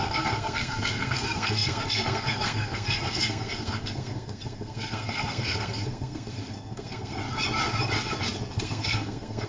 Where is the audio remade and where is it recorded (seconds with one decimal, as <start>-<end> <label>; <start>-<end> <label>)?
0.0-7.2 remade; 7.2-8.6 recorded; 8.6-9.5 remade

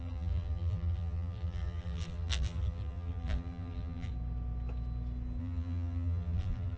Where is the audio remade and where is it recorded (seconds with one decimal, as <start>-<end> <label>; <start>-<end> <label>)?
0.0-4.1 remade; 4.1-5.4 recorded; 5.4-6.8 remade

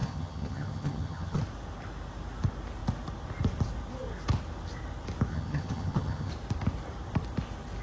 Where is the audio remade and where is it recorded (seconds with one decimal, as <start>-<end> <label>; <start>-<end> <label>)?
0.0-1.4 remade; 1.4-5.3 recorded; 5.3-6.3 remade; 6.3-7.8 recorded